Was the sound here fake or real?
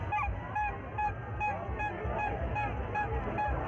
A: real